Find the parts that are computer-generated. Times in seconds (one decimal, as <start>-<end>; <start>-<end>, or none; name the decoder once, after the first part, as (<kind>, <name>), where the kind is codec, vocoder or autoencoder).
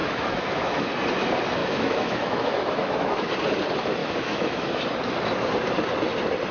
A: 0.0-0.9 (autoencoder, DAC-VAE); 1.6-3.3; 4.0-4.8